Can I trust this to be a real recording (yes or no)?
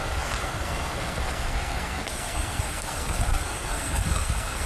no